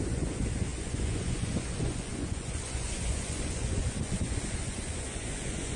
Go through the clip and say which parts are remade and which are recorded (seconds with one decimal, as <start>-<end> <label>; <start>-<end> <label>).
0.0-5.8 remade